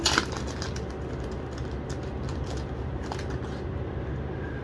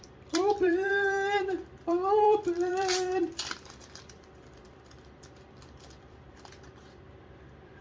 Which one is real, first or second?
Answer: first